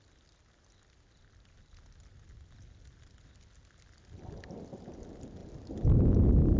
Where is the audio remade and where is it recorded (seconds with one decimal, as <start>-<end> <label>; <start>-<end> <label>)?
0.0-6.6 recorded